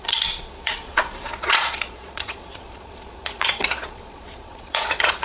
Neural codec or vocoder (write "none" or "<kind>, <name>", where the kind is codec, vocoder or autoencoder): vocoder, Vocos